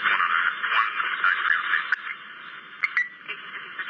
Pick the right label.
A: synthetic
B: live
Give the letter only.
B